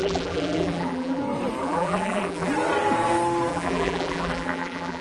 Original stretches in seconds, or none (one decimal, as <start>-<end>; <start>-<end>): 1.2-1.6; 2.5-3.5